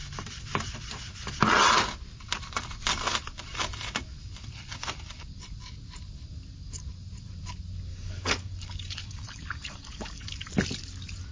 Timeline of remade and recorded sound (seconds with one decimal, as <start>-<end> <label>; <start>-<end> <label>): 0.0-7.9 recorded; 7.9-10.5 remade; 10.5-11.3 recorded